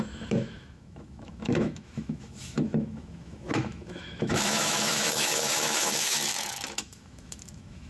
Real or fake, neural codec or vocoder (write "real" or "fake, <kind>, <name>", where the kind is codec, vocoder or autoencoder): fake, autoencoder, DAC-VAE